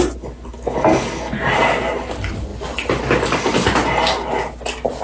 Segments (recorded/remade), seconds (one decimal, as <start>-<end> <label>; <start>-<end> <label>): 0.0-5.0 recorded